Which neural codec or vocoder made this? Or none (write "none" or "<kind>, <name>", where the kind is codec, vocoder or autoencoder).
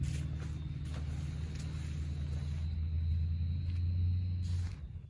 none